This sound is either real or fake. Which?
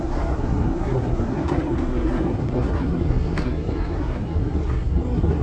fake